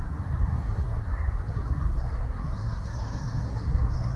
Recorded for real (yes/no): no